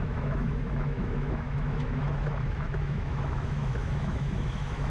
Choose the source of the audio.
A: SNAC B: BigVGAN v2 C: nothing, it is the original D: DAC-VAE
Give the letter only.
D